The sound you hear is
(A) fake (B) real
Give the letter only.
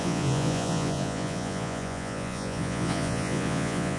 A